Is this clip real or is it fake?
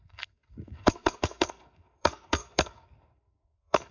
fake